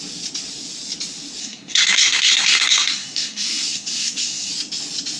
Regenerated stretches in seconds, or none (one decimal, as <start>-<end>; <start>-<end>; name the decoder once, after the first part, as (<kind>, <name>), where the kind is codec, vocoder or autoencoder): 1.4-4.5 (codec, SNAC)